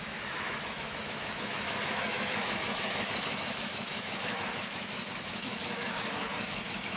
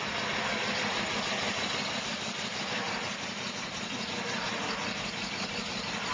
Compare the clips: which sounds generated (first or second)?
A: first